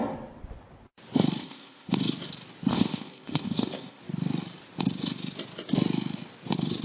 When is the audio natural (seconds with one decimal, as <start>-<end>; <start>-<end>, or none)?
0.0-1.4; 1.9-2.7; 4.0-6.8